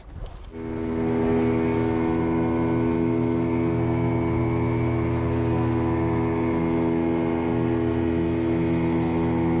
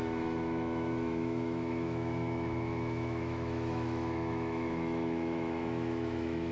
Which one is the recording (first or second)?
first